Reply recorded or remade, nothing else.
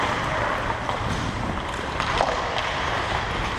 recorded